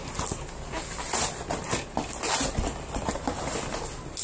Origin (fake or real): real